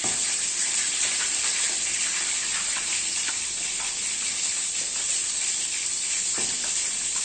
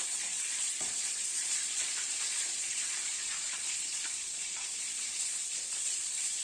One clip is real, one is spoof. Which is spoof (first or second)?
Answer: second